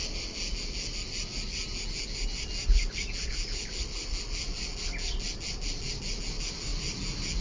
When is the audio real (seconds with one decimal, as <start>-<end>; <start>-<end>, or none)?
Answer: 0.0-7.4